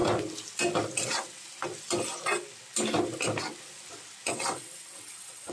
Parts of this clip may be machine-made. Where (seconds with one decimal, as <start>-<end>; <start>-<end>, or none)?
4.3-5.5